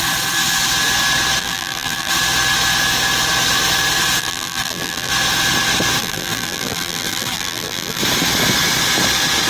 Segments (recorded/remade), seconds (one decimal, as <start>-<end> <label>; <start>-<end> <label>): 0.0-1.4 recorded; 1.4-2.1 remade; 2.1-4.2 recorded; 4.2-5.1 remade; 5.1-6.0 recorded; 6.0-8.0 remade; 8.0-9.5 recorded